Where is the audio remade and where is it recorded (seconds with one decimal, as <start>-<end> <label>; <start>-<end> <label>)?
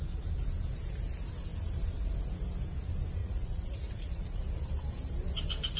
0.0-3.2 recorded; 3.2-4.4 remade; 4.4-5.8 recorded